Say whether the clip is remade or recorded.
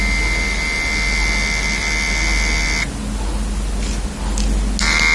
recorded